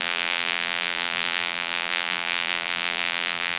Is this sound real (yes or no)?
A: no